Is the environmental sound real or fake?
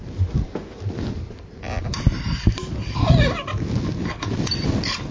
real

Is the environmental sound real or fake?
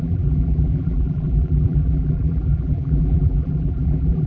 fake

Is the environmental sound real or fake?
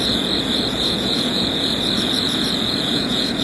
fake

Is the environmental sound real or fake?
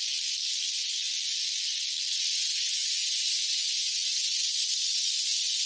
real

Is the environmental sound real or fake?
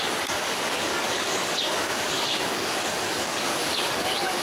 fake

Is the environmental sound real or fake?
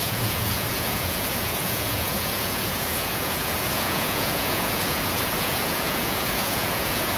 fake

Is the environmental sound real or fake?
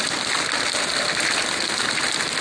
real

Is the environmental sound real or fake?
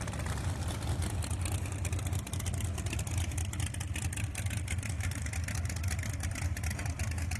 fake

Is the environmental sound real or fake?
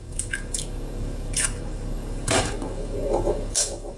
fake